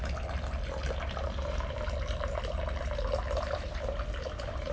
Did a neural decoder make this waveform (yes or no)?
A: no